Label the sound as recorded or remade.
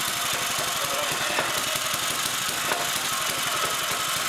recorded